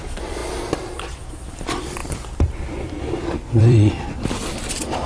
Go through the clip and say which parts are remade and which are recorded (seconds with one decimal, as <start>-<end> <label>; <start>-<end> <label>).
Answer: 0.0-2.0 recorded; 2.0-5.1 remade